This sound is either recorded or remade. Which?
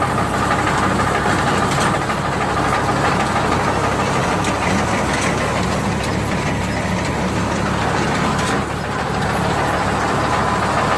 recorded